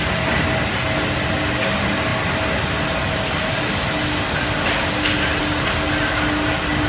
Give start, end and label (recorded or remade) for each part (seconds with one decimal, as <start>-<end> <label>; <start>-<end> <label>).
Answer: 0.0-6.9 recorded